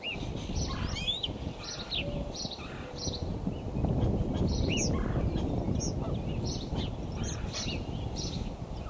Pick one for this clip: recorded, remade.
recorded